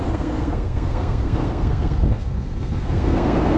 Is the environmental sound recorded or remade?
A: remade